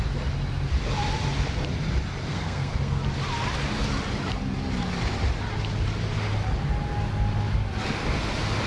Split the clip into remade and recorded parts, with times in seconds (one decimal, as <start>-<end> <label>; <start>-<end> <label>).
0.0-2.3 recorded; 2.3-3.0 remade; 3.0-8.7 recorded